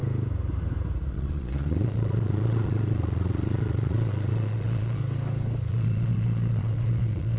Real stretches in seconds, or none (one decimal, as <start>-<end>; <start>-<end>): 0.0-1.1; 5.0-5.7